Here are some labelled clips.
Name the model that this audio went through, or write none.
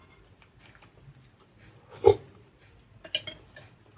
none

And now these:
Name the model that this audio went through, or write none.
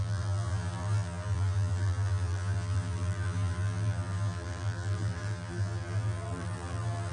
vocoder, BigVGAN v2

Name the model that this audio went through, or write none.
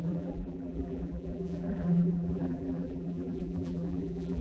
vocoder, BigVGAN v2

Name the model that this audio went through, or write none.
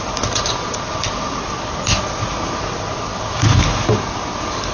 none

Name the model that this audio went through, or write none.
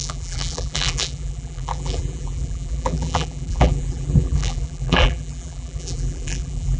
vocoder, BigVGAN v2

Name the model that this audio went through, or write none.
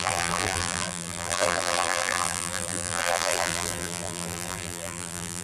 vocoder, BigVGAN v2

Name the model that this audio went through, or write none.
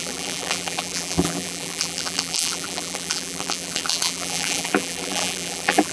vocoder, BigVGAN v2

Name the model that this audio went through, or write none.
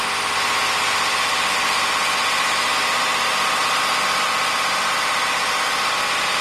none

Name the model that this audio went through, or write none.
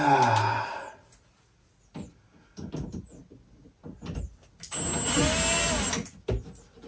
none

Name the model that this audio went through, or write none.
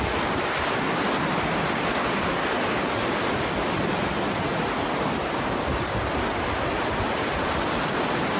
none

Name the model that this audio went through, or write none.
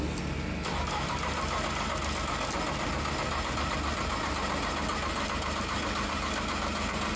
none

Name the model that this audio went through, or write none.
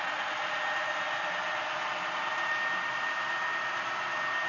none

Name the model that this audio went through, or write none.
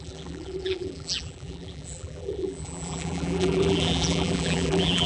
vocoder, BigVGAN v2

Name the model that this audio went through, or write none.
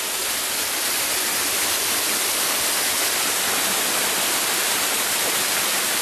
vocoder, BigVGAN v2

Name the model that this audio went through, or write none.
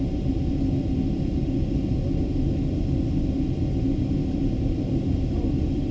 none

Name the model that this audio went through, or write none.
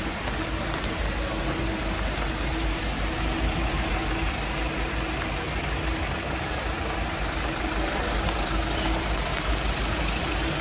vocoder, BigVGAN v2